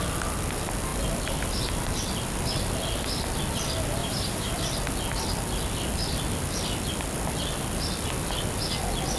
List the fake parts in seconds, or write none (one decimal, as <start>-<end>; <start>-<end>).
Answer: 4.0-4.5